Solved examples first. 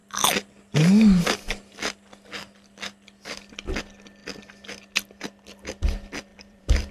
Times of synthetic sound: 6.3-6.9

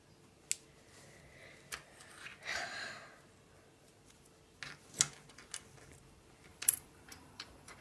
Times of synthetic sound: 6.5-7.8

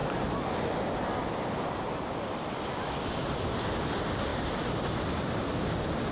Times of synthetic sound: none

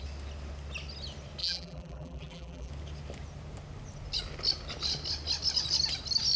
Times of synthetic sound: 1.4-2.7

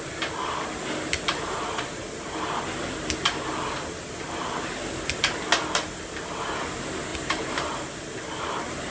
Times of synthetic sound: 7.1-7.8

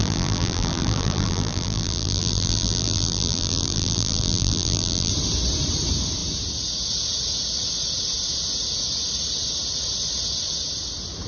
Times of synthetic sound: 0.0-5.1

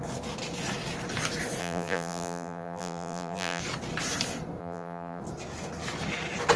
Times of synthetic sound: 1.6-3.6; 4.6-5.2